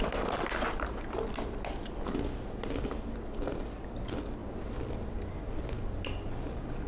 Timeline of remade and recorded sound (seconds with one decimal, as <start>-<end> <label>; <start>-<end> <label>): 0.0-6.9 recorded